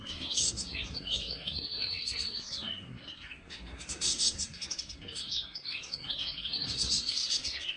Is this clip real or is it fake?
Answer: fake